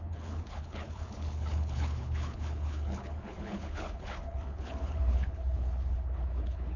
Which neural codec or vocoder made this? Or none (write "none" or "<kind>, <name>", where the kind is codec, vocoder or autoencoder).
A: codec, HILCodec